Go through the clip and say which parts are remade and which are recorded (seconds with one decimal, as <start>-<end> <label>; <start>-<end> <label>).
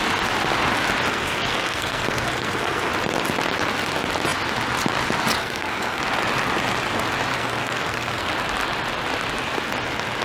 0.0-1.1 recorded; 1.1-2.9 remade; 2.9-5.4 recorded; 5.4-6.0 remade; 6.0-7.3 recorded; 7.3-8.3 remade; 8.3-10.2 recorded